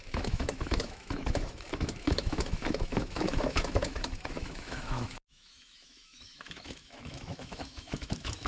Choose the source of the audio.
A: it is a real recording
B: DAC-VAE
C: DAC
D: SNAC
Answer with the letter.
B